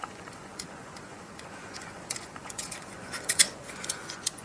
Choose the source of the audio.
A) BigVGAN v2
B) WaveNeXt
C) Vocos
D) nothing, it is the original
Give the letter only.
C